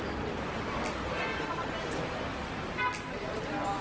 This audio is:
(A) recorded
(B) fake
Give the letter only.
A